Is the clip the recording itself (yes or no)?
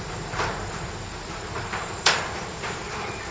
no